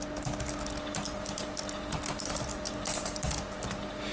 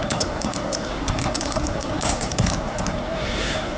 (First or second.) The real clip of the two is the first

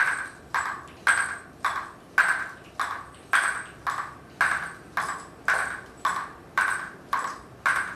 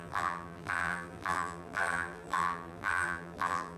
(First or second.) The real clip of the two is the first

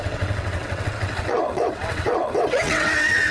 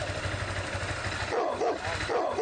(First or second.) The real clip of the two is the second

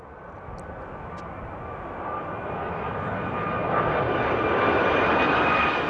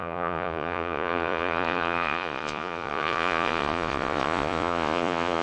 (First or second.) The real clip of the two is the first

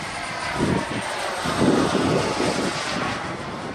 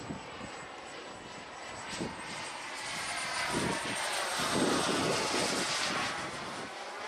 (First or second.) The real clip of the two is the second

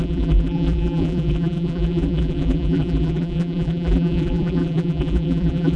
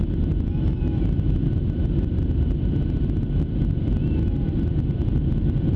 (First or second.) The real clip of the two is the second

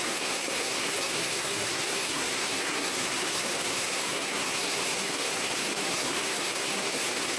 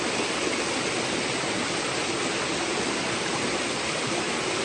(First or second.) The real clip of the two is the second